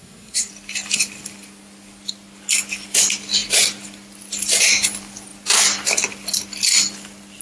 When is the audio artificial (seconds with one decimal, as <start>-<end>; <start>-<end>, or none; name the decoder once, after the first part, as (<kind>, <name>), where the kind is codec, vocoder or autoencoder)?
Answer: 0.0-0.5 (codec, SNAC)